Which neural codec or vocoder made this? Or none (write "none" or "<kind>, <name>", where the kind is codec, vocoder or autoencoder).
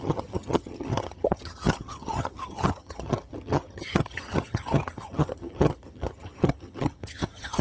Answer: vocoder, HiFi-GAN